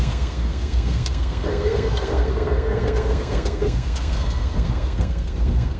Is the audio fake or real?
fake